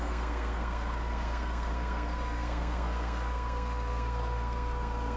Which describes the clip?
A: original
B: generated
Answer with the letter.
B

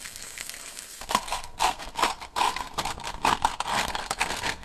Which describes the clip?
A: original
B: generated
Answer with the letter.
B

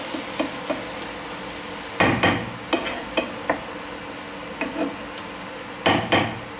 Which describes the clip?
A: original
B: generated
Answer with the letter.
A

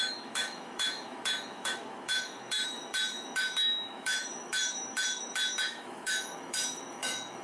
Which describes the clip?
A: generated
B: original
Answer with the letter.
A